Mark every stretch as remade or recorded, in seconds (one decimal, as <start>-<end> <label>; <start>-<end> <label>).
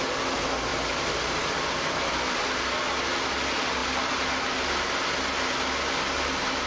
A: 0.0-6.7 recorded